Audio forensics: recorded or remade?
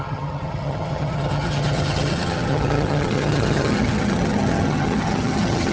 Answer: remade